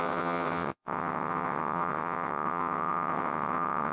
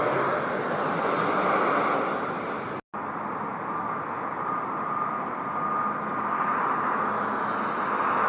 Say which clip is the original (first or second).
second